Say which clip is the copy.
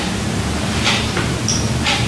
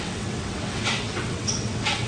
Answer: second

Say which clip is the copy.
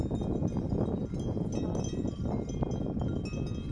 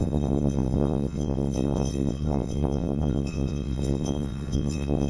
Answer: second